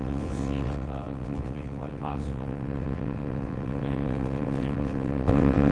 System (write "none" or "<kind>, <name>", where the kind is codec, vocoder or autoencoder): vocoder, WaveNeXt